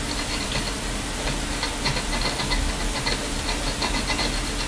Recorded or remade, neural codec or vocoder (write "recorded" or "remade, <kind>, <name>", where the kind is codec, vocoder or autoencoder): recorded